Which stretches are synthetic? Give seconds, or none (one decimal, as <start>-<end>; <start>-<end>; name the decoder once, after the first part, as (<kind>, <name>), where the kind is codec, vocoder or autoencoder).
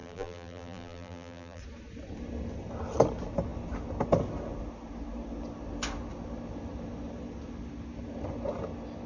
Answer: 0.0-1.6 (vocoder, BigVGAN v2)